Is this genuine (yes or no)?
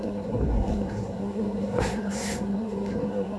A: no